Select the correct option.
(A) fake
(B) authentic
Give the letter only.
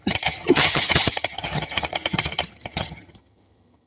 A